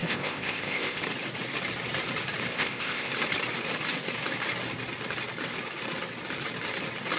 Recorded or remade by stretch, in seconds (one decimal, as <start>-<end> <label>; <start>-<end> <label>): 0.0-1.0 remade; 1.0-2.5 recorded; 2.5-3.1 remade; 3.1-7.2 recorded